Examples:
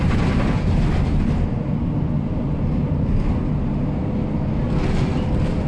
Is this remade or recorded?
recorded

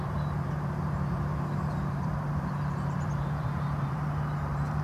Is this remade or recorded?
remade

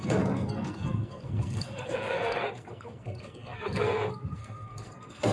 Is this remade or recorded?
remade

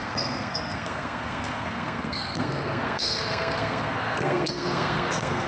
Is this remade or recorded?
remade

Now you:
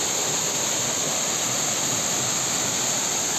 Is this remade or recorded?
recorded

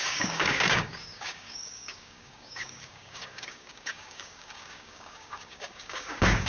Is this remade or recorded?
remade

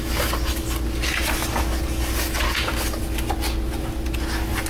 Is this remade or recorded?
recorded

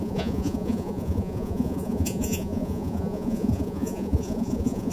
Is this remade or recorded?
remade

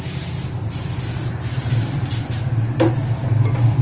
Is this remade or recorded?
remade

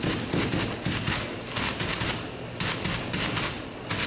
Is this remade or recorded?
recorded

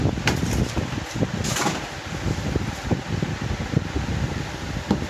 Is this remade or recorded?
recorded